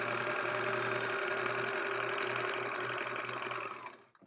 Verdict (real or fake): real